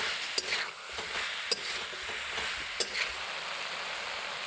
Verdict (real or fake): real